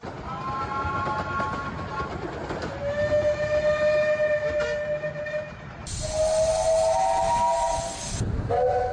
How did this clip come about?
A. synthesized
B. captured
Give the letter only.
B